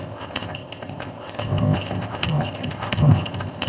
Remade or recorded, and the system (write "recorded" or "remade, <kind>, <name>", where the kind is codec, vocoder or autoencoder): remade, codec, ZipCodec